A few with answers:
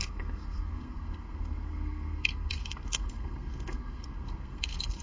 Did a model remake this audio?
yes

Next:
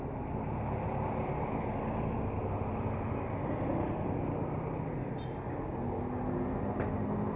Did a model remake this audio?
no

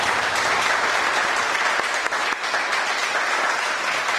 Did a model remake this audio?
no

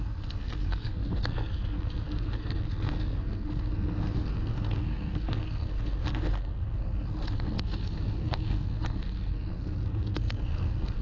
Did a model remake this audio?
yes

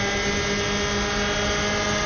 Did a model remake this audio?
no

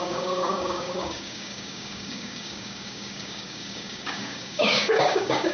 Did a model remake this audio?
yes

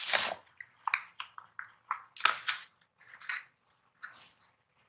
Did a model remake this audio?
no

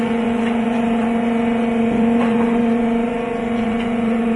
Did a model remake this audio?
yes